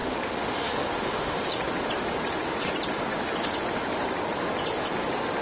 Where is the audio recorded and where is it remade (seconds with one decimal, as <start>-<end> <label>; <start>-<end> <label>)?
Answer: 0.0-1.6 remade; 1.6-5.4 recorded